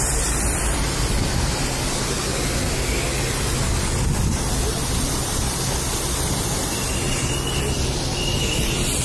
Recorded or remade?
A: recorded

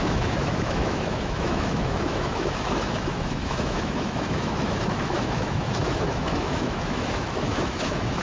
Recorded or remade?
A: remade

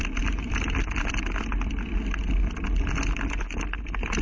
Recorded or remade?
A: recorded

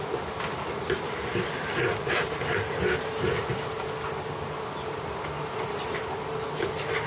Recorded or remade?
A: recorded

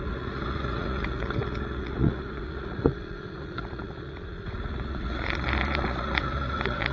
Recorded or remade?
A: remade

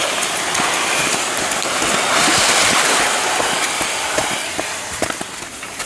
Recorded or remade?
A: recorded